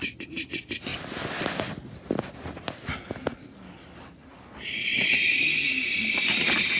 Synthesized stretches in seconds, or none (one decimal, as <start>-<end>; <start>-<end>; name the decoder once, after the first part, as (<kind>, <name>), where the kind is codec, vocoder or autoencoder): none